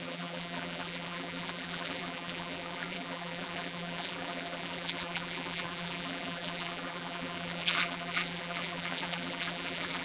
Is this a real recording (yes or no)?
no